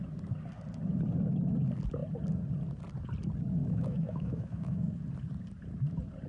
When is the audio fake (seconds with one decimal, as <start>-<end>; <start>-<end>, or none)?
3.6-5.0